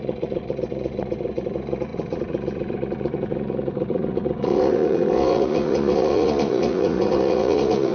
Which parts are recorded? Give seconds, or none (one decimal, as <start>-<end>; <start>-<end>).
none